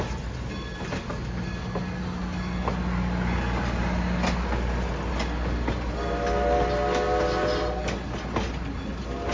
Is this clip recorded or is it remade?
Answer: recorded